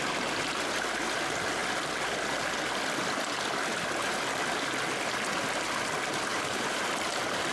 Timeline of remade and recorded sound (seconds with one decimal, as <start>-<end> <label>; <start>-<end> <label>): 0.0-6.3 recorded; 6.3-6.8 remade; 6.8-7.5 recorded